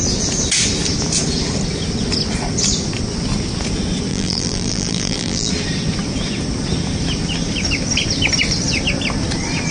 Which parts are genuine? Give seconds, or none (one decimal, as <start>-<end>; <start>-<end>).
0.0-4.1; 5.5-9.7